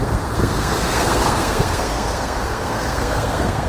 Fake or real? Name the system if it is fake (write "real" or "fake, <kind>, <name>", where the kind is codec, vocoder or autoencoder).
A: fake, codec, SNAC